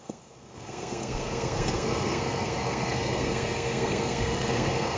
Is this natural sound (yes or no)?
no